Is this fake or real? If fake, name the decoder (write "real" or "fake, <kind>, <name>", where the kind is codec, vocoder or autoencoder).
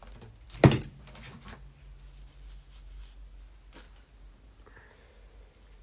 real